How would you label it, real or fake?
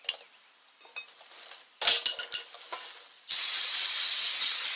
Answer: real